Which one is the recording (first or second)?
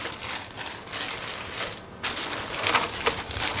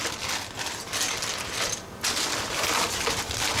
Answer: first